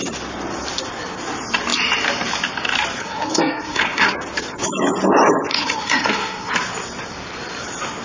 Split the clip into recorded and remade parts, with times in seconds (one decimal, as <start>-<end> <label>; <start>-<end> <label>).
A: 0.0-3.0 recorded; 3.0-4.1 remade; 4.1-5.5 recorded; 5.5-6.5 remade; 6.5-8.0 recorded